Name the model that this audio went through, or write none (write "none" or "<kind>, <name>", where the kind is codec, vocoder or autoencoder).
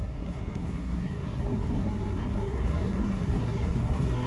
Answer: codec, SNAC